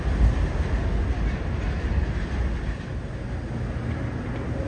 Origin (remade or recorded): recorded